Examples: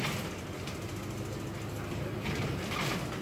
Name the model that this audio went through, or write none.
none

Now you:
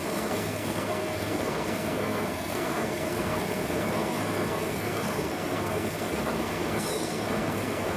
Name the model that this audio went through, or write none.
codec, SNAC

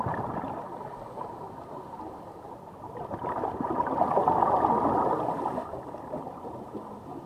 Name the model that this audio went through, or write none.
none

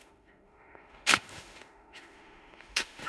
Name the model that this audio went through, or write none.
autoencoder, DAC-VAE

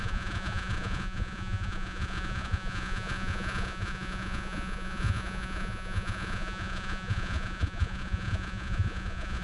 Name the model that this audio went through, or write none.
vocoder, Vocos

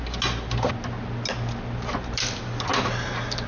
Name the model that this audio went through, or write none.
none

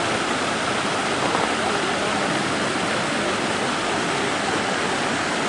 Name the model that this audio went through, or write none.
vocoder, BigVGAN v2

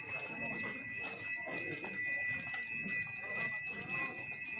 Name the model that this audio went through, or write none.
none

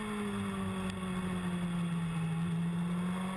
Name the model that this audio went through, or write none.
none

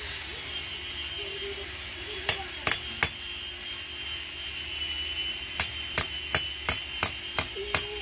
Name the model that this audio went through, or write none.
none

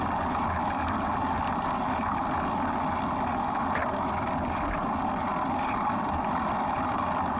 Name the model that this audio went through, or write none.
none